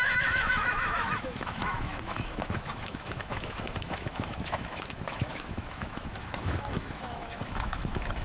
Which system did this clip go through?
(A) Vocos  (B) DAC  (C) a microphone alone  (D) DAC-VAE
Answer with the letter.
D